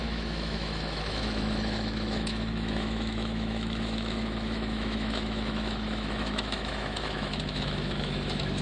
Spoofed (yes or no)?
yes